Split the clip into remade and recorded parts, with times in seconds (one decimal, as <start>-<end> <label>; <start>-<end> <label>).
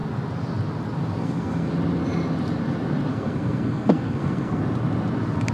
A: 0.0-1.2 recorded; 1.2-1.7 remade; 1.7-3.1 recorded; 3.1-4.6 remade; 4.6-5.5 recorded